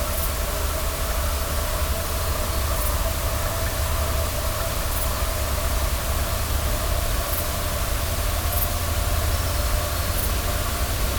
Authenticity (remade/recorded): recorded